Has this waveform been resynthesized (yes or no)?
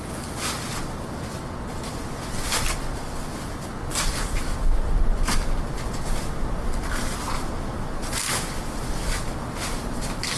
no